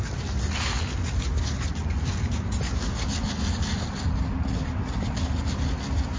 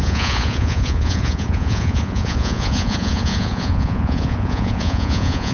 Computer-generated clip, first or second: second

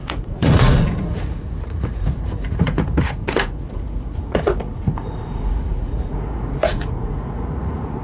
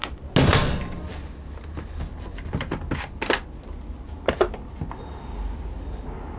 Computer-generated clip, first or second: first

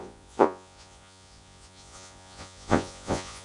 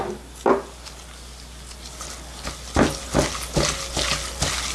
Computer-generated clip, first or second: first